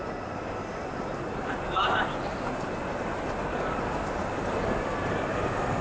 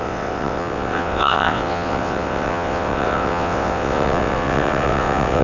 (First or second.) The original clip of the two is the first